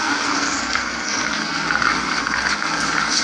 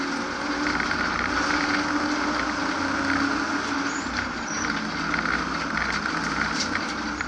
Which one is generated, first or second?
first